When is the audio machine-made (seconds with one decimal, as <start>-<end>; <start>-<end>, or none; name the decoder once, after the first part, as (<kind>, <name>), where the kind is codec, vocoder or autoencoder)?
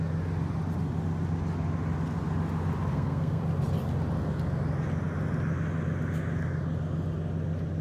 2.9-3.4 (codec, SNAC)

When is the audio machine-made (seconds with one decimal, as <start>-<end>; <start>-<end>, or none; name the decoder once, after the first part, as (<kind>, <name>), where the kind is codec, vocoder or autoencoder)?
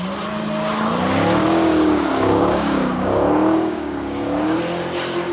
1.4-4.6 (codec, DAC)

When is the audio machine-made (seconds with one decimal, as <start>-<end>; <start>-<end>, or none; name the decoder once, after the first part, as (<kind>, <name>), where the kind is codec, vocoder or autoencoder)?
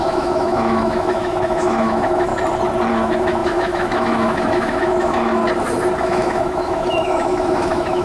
0.0-2.3 (autoencoder, DAC-VAE); 2.9-5.4; 6.0-8.0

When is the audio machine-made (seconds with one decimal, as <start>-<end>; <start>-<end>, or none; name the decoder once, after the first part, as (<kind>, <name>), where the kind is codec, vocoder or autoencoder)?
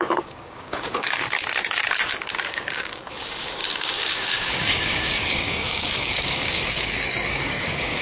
0.0-1.2 (codec, DAC); 2.5-8.0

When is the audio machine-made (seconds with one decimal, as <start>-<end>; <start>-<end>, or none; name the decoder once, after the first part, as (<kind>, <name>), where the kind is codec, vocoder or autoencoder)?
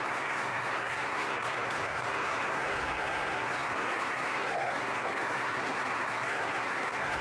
0.0-7.2 (codec, SNAC)